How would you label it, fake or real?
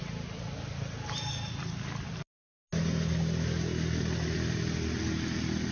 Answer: real